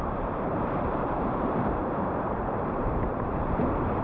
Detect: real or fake fake